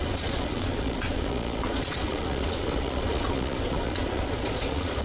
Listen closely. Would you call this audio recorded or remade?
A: remade